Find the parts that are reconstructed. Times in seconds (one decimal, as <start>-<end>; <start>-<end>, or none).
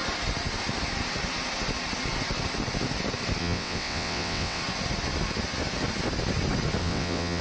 3.4-4.6; 6.8-7.4